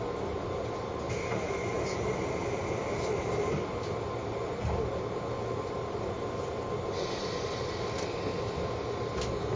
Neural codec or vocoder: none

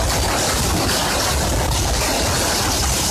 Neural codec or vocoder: none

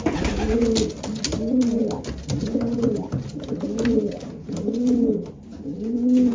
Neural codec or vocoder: none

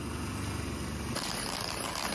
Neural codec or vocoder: none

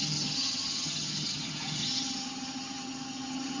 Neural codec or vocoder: vocoder, HiFi-GAN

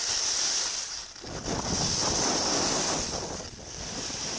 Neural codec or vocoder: none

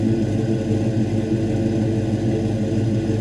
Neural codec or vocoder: none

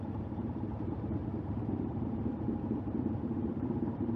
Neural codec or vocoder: vocoder, BigVGAN v2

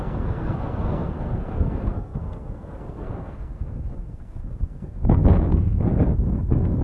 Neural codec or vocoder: codec, SNAC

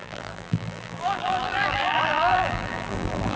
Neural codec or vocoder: vocoder, BigVGAN v2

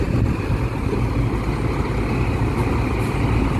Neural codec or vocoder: none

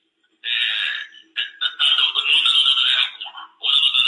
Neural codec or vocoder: none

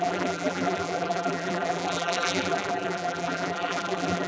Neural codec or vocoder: vocoder, BigVGAN v2